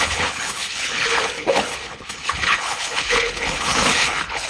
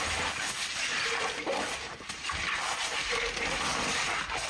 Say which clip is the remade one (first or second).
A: first